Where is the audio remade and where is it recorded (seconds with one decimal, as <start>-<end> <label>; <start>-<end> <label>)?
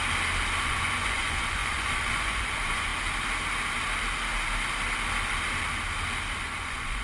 0.0-0.6 recorded; 0.6-2.9 remade; 2.9-6.4 recorded; 6.4-7.0 remade